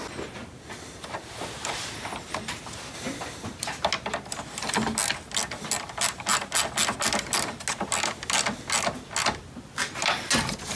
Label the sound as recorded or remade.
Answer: recorded